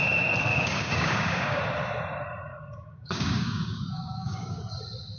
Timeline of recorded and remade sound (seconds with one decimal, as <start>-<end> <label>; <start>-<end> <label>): 0.0-0.5 recorded; 0.5-1.6 remade; 1.6-2.5 recorded; 2.5-4.6 remade; 4.6-5.2 recorded